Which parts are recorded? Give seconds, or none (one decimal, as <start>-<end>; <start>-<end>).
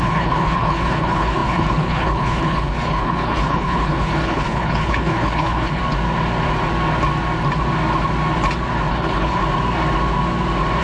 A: 5.8-8.9; 9.4-10.8